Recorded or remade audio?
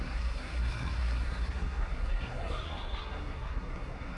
remade